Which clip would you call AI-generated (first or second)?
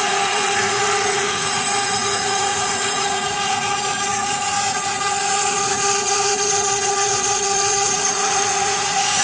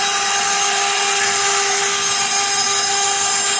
first